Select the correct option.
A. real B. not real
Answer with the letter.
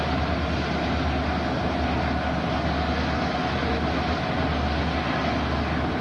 A